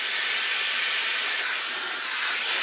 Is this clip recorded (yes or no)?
yes